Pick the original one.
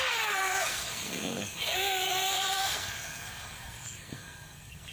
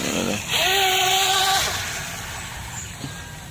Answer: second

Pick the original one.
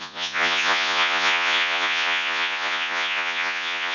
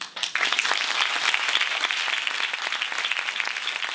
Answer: second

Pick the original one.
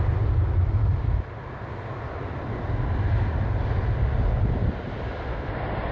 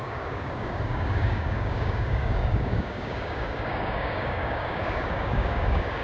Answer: first